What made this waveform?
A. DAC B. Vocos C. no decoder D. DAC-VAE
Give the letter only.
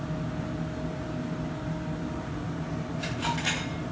C